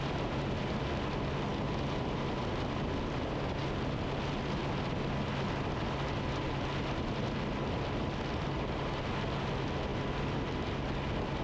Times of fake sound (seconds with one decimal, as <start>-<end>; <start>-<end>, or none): none